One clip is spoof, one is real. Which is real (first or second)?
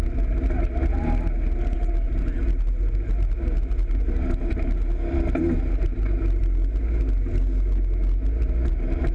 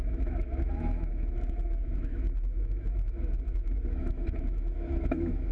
first